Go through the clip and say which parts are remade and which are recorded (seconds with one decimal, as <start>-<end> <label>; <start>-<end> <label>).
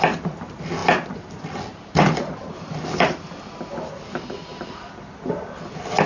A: 0.0-6.1 recorded